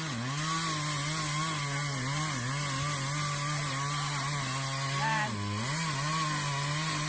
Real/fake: real